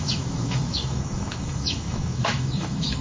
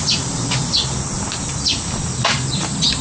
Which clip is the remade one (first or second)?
first